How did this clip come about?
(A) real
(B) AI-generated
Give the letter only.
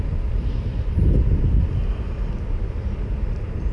A